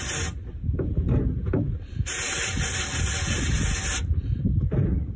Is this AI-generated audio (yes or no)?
yes